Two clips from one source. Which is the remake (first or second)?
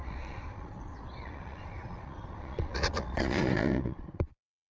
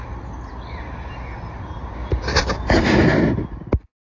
first